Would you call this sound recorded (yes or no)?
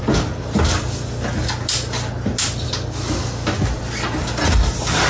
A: yes